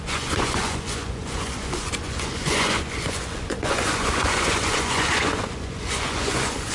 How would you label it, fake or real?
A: fake